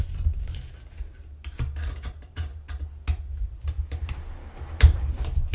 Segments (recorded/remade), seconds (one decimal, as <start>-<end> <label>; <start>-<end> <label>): 0.0-1.2 remade; 1.2-2.1 recorded; 2.1-2.5 remade; 2.5-4.1 recorded; 4.1-5.5 remade